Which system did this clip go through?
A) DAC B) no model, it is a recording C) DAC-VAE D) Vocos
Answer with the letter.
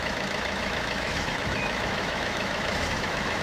C